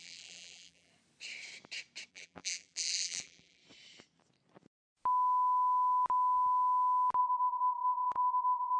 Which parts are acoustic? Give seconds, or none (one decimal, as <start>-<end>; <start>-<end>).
0.9-2.1; 3.6-7.2